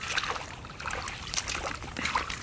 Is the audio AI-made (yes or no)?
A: no